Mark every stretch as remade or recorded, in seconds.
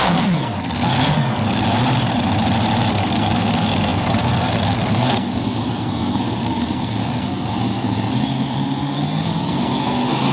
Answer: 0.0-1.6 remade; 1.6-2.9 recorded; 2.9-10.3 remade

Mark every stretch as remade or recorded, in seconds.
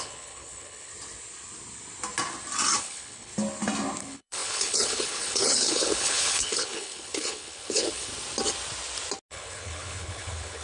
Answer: 0.0-0.9 remade; 0.9-2.8 recorded; 2.8-3.3 remade; 3.3-4.0 recorded; 4.0-8.1 remade; 8.1-9.3 recorded; 9.3-10.6 remade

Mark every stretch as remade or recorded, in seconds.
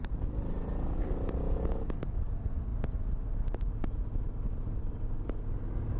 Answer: 0.0-6.0 recorded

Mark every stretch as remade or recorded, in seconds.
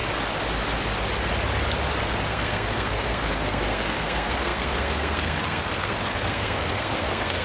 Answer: 0.0-2.3 recorded; 2.3-7.4 remade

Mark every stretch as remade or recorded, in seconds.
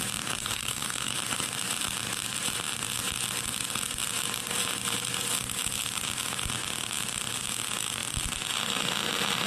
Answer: 0.0-0.4 recorded; 0.4-1.1 remade; 1.1-9.5 recorded